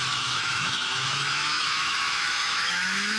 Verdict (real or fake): fake